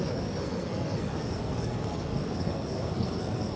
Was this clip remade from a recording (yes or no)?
yes